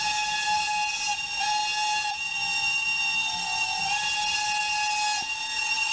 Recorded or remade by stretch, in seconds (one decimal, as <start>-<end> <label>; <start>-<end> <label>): 0.0-5.9 recorded